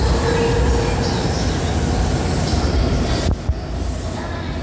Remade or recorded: recorded